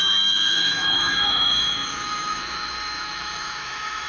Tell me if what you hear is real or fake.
fake